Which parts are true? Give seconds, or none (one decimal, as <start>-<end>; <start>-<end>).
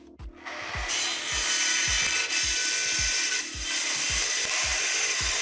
0.0-4.7